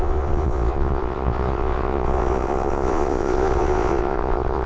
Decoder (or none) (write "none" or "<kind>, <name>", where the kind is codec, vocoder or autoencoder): vocoder, Vocos